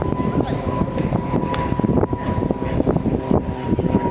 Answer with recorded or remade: recorded